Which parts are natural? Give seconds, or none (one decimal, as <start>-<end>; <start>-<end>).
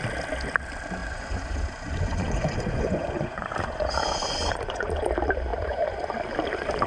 0.0-1.0; 5.1-5.5; 6.1-6.9